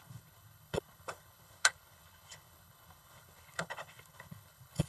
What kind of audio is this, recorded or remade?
remade